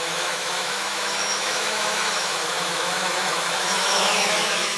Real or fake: fake